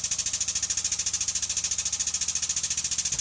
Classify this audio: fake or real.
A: real